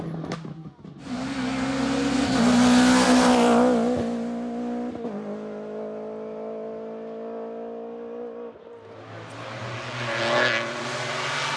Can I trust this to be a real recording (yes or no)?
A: yes